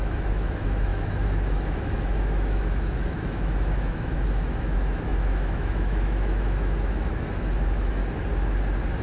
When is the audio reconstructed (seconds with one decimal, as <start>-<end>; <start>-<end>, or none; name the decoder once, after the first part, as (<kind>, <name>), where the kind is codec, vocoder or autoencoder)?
0.0-8.0 (autoencoder, DAC-VAE)

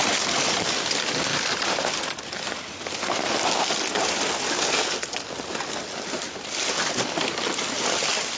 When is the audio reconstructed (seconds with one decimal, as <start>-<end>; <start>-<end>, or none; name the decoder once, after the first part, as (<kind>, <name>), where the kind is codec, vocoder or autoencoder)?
1.3-1.9 (vocoder, BigVGAN v2)

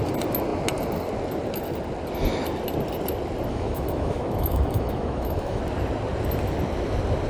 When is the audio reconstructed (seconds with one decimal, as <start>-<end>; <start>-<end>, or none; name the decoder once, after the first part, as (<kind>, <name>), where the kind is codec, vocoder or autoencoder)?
3.5-5.6 (autoencoder, DAC-VAE)

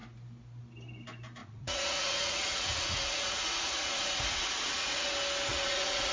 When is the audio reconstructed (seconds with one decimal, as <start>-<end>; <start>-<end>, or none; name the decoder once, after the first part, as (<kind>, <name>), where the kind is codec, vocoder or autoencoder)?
1.4-5.1 (vocoder, Vocos); 5.5-6.1